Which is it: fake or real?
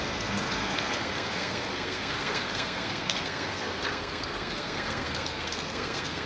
fake